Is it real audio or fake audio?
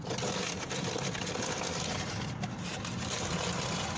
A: real